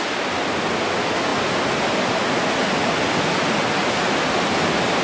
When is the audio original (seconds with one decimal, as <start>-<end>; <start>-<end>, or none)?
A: 0.0-5.0